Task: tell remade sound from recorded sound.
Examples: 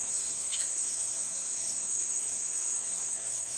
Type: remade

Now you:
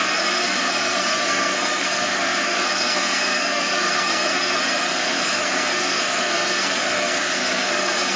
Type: remade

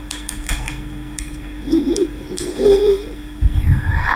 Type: remade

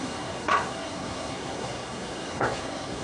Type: remade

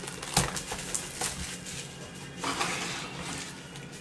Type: recorded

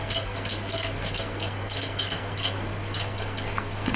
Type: remade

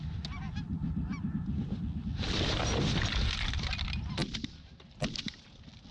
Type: recorded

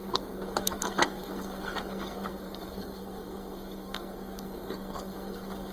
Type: remade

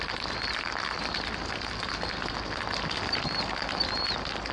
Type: recorded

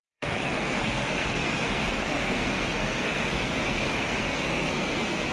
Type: remade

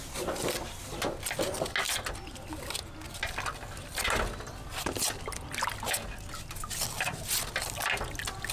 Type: recorded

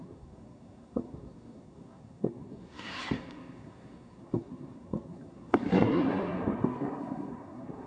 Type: remade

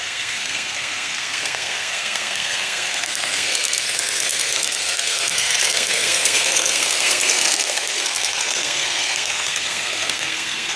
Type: remade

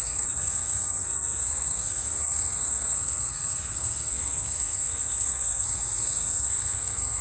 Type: remade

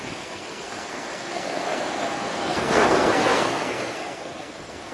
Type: remade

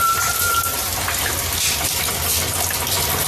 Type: recorded